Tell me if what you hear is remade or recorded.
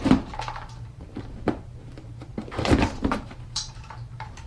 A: remade